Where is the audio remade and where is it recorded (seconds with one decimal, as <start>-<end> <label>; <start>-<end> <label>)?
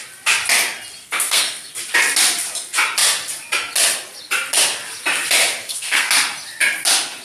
0.0-1.0 recorded; 1.0-1.7 remade; 1.7-5.6 recorded; 5.6-6.1 remade; 6.1-7.2 recorded